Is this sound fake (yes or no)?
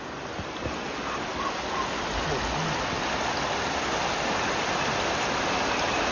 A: no